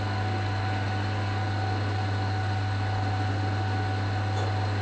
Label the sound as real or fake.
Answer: real